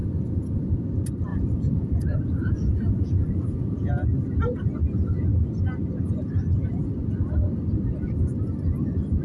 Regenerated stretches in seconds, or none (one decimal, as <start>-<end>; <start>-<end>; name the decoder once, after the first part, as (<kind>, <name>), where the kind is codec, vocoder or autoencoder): 0.0-0.7 (vocoder, Vocos); 1.3-3.9